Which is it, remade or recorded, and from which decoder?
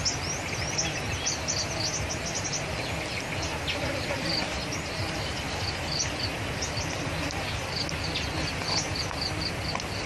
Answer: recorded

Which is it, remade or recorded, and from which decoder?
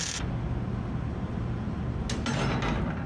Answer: recorded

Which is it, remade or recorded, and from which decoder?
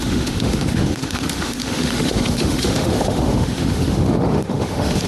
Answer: remade, autoencoder, DAC-VAE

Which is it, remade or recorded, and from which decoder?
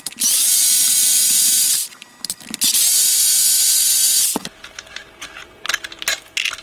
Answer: recorded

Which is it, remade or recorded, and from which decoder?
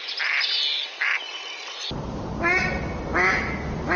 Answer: recorded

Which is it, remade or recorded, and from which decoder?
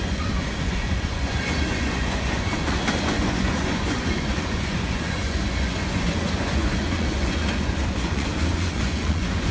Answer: remade, vocoder, Vocos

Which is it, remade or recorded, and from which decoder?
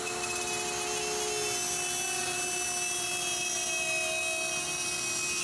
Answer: recorded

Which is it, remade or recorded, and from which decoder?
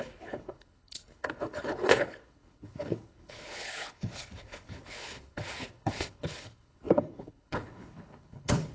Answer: remade, codec, HILCodec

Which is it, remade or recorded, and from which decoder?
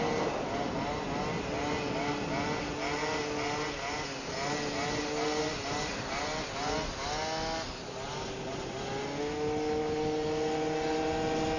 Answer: recorded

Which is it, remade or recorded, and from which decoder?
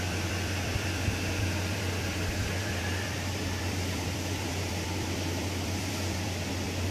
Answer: remade, vocoder, BigVGAN v2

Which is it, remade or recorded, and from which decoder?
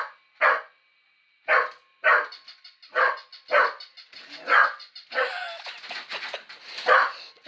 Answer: recorded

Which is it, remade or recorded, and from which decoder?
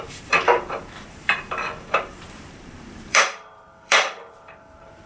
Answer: remade, vocoder, BigVGAN v2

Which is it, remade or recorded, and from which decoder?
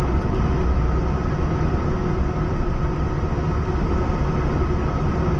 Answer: recorded